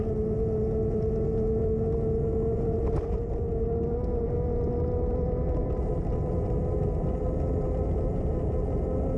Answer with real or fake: real